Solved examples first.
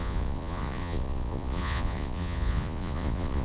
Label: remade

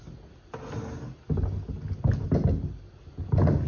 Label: recorded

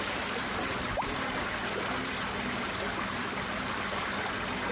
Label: recorded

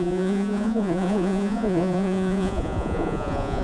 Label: remade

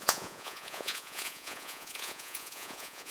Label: remade